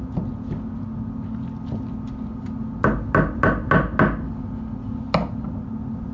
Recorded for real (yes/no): yes